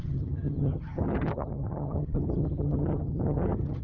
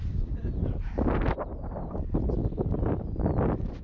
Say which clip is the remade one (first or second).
first